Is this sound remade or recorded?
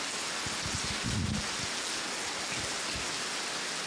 recorded